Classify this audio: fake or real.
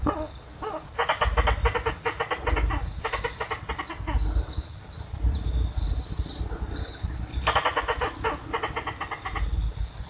real